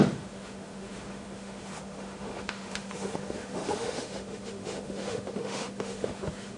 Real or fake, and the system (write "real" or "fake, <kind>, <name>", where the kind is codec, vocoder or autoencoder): fake, autoencoder, DAC-VAE